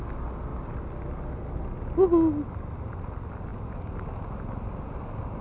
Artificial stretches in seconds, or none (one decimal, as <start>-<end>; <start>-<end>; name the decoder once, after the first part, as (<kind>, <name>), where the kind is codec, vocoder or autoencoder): none